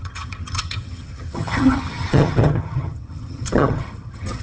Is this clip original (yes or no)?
no